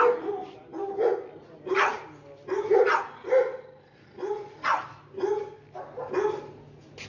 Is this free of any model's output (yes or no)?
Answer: yes